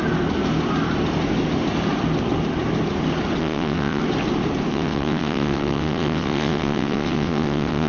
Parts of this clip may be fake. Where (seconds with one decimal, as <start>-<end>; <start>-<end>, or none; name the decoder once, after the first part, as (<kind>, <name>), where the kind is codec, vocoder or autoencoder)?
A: 3.4-4.0 (vocoder, WaveNeXt); 4.7-7.9